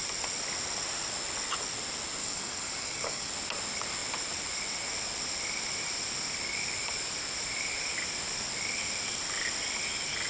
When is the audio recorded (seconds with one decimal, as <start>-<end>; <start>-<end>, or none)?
0.0-2.2; 3.3-10.3